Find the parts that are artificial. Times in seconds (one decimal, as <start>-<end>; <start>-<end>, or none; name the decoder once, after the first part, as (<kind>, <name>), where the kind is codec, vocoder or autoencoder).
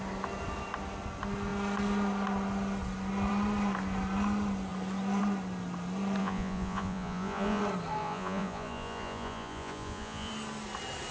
6.2-7.6 (vocoder, Vocos); 8.0-10.3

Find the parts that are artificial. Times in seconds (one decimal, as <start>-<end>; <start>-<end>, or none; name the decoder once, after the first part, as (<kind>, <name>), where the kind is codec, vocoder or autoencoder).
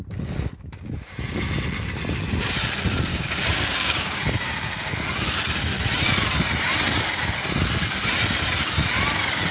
3.1-4.2 (codec, DAC)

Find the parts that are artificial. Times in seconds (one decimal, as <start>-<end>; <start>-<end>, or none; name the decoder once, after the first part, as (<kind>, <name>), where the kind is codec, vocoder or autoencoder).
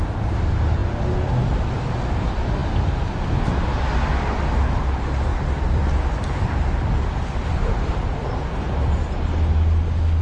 none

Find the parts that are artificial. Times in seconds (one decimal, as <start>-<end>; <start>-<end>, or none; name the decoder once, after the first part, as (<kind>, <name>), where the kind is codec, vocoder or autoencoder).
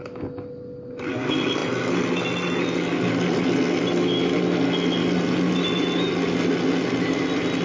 none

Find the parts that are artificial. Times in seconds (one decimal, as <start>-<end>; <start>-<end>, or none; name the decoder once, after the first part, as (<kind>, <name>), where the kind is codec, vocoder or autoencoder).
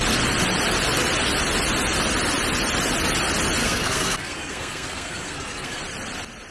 3.6-5.8 (codec, SNAC)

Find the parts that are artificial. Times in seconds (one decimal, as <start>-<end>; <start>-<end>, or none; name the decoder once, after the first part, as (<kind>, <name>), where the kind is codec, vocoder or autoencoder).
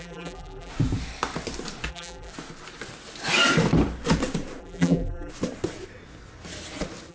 0.0-0.7 (vocoder, BigVGAN v2); 1.9-2.3; 4.6-5.3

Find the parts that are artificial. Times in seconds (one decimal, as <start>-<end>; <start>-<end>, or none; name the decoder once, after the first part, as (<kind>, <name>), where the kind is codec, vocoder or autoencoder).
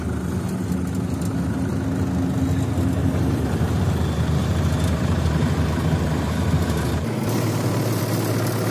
3.0-3.8 (vocoder, BigVGAN v2); 4.4-8.0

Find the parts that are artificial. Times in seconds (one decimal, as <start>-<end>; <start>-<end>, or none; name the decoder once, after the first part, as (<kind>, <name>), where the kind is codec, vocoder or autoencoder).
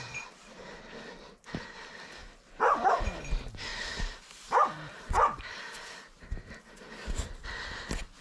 2.2-2.9 (vocoder, BigVGAN v2); 3.7-4.3